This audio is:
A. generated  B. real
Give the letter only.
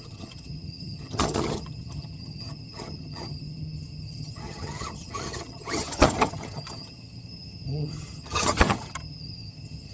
A